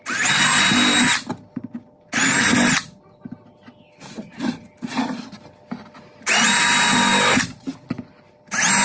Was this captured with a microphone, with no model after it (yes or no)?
yes